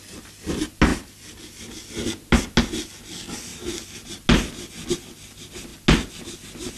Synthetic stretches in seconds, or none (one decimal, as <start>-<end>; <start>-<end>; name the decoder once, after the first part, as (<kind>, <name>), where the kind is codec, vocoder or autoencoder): none